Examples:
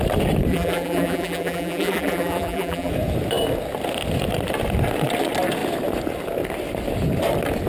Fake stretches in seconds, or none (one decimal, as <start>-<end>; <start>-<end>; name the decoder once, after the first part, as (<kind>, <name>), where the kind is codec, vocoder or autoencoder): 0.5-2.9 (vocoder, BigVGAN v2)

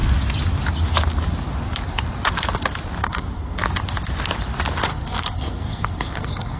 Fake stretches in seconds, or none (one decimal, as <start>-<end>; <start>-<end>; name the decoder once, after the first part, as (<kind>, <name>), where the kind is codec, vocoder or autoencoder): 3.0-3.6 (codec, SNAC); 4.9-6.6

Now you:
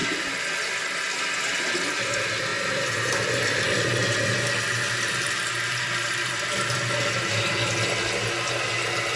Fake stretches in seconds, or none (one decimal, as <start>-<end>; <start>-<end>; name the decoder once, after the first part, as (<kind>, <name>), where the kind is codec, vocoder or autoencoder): none

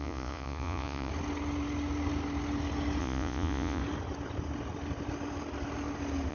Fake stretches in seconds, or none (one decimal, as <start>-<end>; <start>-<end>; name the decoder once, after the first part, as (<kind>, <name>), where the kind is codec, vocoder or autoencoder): 0.0-1.1 (vocoder, Vocos); 3.0-3.8

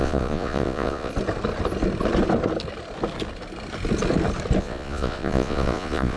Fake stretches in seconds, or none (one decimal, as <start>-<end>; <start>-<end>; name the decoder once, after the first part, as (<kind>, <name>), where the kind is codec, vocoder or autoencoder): 0.0-1.1 (vocoder, Vocos); 4.6-6.2